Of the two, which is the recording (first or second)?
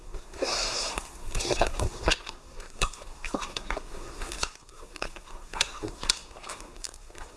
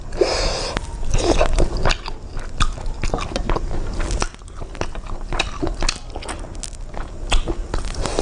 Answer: second